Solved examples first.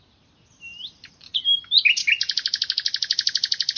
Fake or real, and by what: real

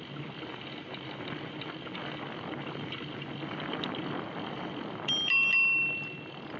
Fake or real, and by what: real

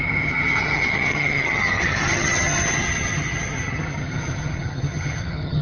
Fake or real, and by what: fake, vocoder, HiFi-GAN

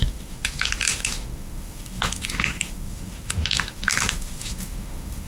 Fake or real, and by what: fake, autoencoder, DAC-VAE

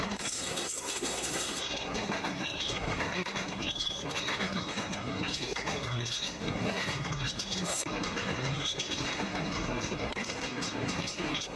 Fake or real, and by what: fake, codec, SNAC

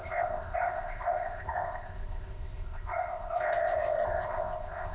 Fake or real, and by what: fake, codec, ZipCodec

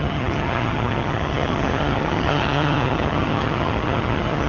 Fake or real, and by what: fake, vocoder, HiFi-GAN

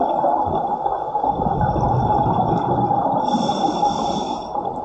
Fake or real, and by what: real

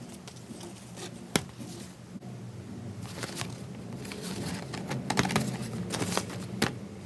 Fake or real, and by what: real